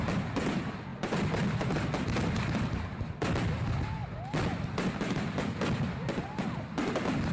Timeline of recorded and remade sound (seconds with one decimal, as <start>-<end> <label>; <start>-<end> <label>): 0.0-7.3 recorded